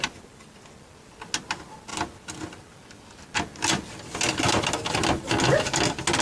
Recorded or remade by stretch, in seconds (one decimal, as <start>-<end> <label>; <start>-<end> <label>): 0.0-6.2 recorded